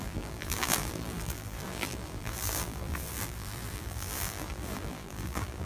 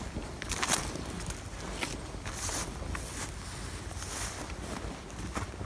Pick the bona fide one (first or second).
second